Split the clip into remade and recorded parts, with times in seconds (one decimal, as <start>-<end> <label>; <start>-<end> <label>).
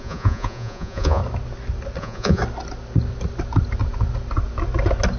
0.0-1.2 remade; 1.2-2.0 recorded; 2.0-2.4 remade; 2.4-5.2 recorded